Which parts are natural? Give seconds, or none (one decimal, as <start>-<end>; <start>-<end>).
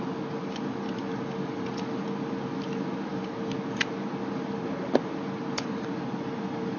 0.0-6.8